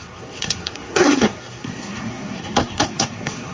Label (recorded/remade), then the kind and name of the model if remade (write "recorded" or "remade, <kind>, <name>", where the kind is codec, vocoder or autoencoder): remade, codec, SNAC